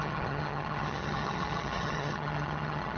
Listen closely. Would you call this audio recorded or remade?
remade